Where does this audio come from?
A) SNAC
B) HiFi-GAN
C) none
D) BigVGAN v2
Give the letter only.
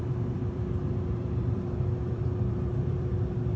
D